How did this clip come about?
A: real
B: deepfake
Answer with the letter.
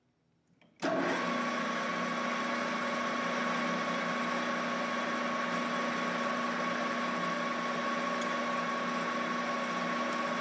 A